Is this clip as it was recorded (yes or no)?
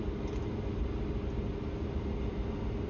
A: yes